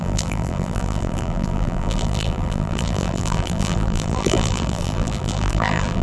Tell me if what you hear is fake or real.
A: fake